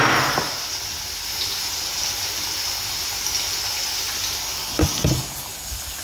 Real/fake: real